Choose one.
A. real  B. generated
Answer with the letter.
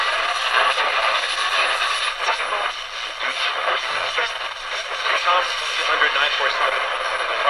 A